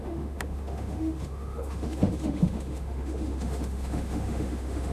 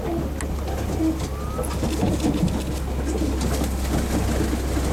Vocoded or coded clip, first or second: first